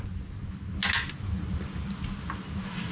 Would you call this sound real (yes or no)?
yes